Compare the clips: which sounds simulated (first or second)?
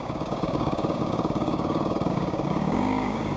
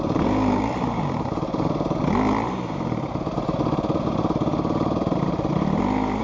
first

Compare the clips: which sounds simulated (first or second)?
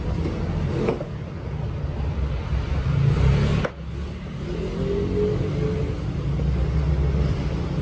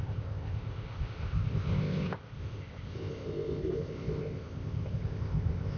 second